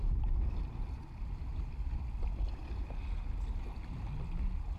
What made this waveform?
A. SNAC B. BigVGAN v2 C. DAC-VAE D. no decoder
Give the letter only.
D